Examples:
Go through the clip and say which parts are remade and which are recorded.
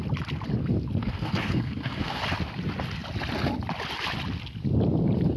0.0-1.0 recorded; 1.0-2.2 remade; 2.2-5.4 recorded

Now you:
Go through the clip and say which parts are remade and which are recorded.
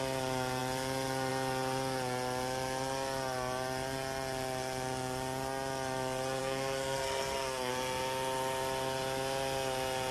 0.0-6.4 recorded; 6.4-7.7 remade; 7.7-10.1 recorded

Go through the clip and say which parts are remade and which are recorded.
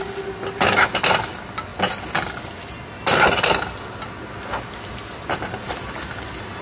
0.0-6.6 recorded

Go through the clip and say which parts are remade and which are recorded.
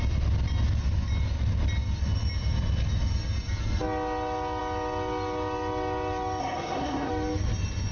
0.0-6.4 recorded; 6.4-7.1 remade; 7.1-7.9 recorded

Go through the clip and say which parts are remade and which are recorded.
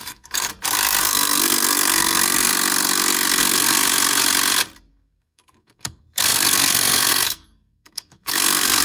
0.0-0.5 remade; 0.5-1.0 recorded; 1.0-2.5 remade; 2.5-3.4 recorded; 3.4-3.8 remade; 3.8-4.9 recorded; 4.9-8.8 remade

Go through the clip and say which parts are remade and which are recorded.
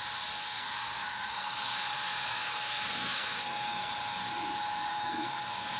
0.0-0.4 recorded; 0.4-3.9 remade; 3.9-4.9 recorded; 4.9-5.8 remade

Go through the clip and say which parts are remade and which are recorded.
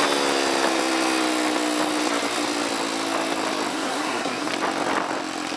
0.0-3.7 recorded; 3.7-4.5 remade; 4.5-5.6 recorded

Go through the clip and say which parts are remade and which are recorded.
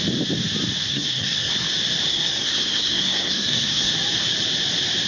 0.0-0.9 recorded; 0.9-1.5 remade; 1.5-2.1 recorded; 2.1-3.9 remade; 3.9-5.1 recorded